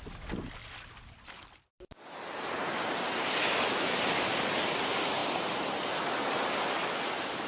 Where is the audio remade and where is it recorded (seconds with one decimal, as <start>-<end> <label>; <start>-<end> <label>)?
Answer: 0.0-7.5 recorded